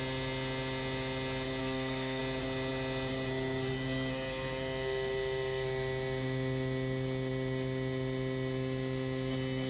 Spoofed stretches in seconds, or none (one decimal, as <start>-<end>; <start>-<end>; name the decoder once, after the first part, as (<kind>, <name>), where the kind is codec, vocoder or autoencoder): 1.6-2.2 (codec, SNAC)